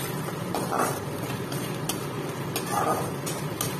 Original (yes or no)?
yes